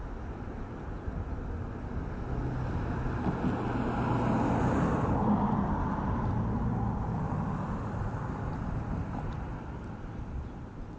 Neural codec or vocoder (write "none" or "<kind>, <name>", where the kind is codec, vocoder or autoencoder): none